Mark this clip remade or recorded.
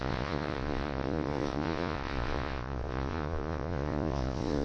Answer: remade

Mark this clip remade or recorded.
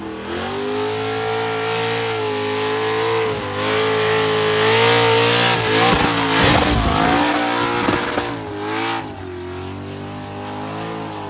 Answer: recorded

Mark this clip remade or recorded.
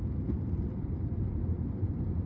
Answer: remade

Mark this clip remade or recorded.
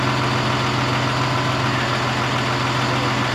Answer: recorded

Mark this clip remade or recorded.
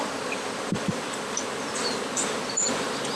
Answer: remade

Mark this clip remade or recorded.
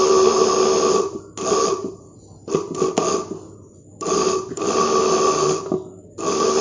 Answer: recorded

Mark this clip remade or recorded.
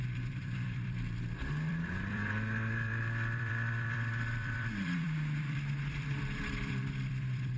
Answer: remade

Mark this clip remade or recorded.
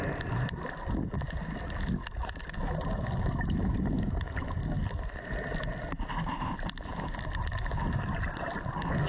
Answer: recorded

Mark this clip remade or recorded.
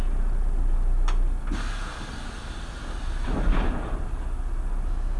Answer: recorded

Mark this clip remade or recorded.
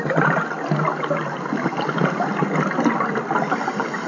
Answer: recorded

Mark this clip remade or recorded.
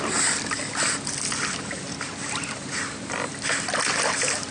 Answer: recorded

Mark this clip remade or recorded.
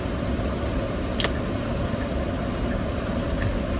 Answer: recorded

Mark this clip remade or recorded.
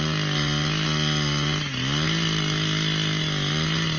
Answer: recorded